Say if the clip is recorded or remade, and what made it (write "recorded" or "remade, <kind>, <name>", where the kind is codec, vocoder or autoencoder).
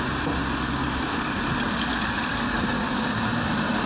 recorded